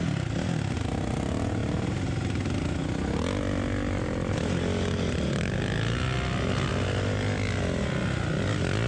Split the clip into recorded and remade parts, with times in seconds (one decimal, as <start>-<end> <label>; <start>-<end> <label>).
0.0-8.9 recorded